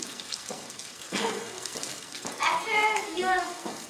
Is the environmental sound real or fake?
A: fake